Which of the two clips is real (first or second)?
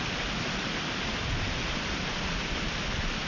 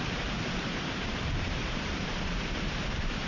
first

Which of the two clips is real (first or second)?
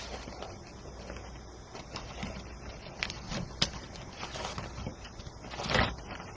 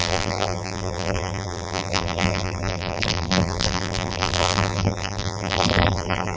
first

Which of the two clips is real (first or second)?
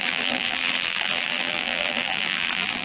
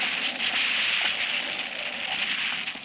second